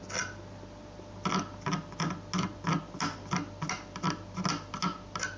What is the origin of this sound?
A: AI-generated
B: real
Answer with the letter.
B